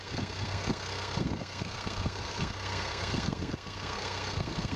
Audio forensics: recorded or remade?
remade